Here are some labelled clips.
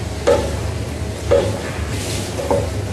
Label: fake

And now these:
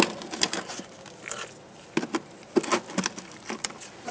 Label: real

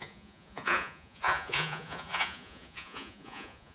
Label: fake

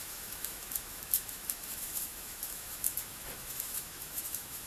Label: fake